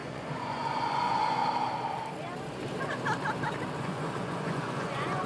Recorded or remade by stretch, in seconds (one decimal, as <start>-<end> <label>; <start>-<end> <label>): 0.0-1.4 remade; 1.4-3.8 recorded; 3.8-5.3 remade